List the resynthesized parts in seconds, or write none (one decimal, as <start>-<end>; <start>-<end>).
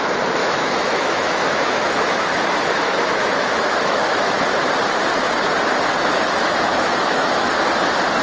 0.4-4.6; 6.7-7.5